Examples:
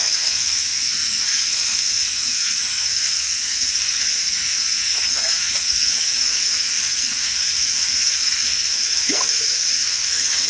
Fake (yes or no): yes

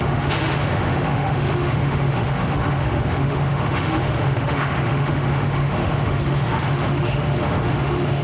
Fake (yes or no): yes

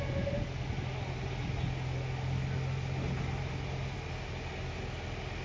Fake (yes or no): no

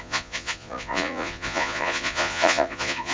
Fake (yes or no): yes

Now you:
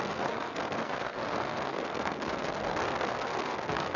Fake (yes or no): yes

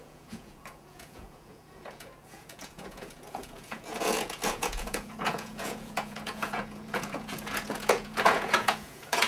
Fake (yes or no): yes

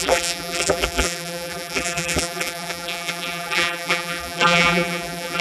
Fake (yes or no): yes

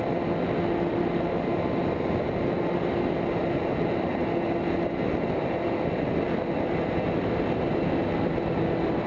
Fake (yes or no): no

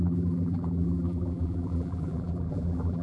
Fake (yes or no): yes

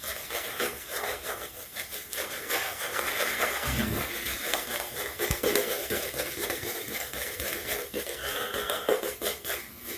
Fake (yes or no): yes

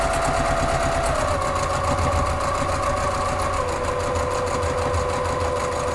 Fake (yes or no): no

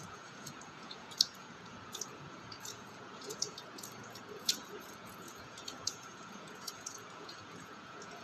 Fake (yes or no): yes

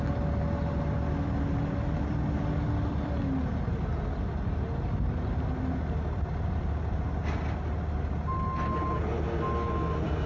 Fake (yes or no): no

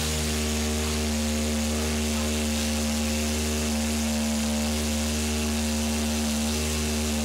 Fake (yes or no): no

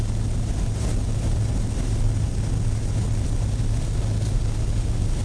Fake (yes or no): no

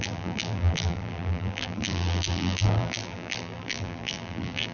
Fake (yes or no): yes